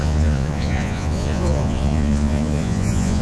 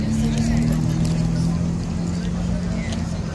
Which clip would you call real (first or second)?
second